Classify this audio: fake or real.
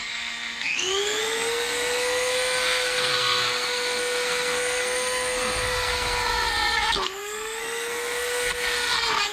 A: fake